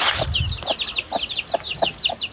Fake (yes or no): no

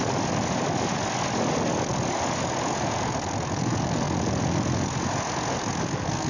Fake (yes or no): no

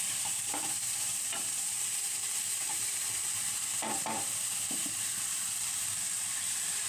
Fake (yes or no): yes